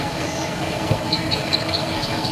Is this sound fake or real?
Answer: fake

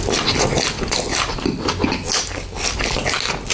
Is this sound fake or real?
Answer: real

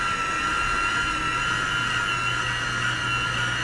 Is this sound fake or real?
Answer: real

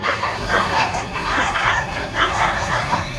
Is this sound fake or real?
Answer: fake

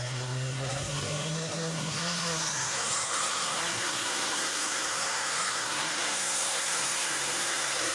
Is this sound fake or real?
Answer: fake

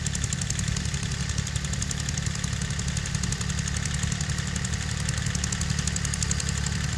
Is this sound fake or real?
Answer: real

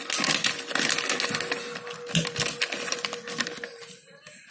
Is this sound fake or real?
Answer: real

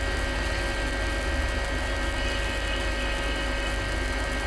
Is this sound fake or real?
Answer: real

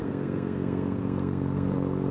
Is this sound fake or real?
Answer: fake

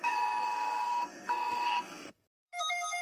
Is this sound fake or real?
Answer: fake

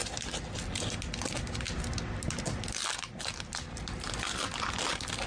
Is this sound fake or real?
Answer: real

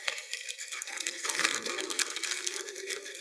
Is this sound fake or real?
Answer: fake